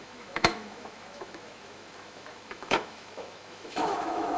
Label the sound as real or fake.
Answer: fake